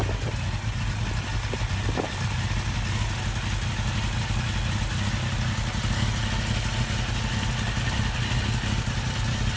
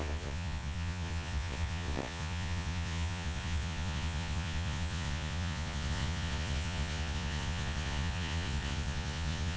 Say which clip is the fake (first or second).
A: second